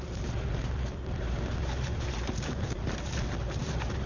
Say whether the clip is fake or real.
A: fake